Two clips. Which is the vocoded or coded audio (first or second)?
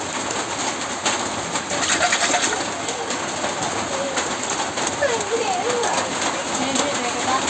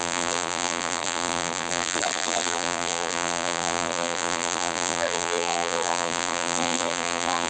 second